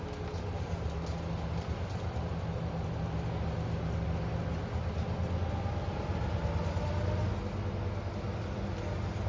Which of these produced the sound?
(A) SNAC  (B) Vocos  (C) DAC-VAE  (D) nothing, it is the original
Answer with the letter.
D